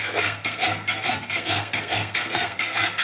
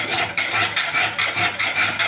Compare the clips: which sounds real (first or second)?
second